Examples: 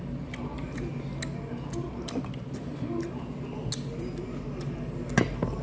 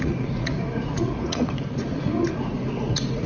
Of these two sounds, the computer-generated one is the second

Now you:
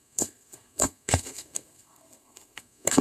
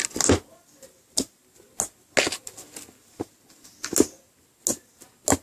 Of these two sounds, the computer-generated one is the first